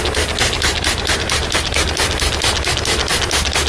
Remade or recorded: recorded